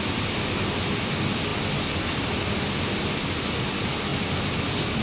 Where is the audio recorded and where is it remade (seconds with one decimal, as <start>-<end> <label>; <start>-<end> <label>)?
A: 0.0-5.0 recorded